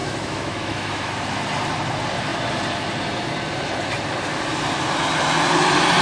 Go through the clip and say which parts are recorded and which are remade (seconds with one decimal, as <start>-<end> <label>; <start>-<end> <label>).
0.0-1.1 remade; 1.1-6.0 recorded